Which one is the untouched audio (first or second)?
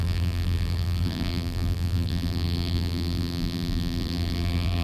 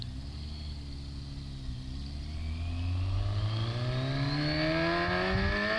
second